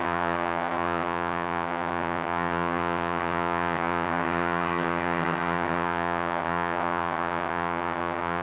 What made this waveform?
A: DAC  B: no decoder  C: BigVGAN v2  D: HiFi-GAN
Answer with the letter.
D